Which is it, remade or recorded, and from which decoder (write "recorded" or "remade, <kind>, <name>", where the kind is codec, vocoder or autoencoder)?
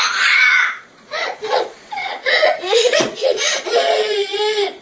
remade, vocoder, Vocos